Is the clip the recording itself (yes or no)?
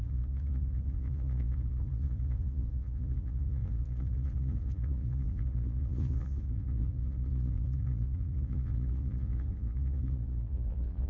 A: no